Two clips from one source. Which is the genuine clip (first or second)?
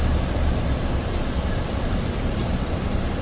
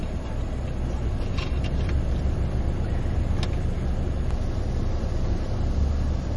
second